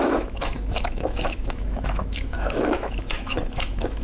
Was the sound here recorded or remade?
remade